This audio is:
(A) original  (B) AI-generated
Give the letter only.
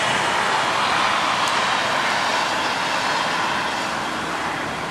A